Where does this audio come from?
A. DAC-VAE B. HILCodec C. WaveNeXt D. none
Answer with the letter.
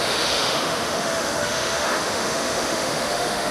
A